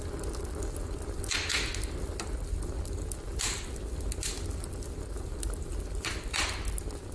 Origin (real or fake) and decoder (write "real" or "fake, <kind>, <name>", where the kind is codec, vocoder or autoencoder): real